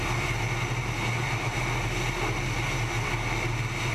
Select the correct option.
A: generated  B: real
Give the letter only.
B